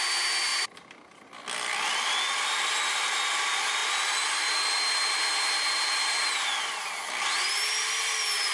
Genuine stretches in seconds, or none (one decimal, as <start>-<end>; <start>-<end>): 0.0-8.5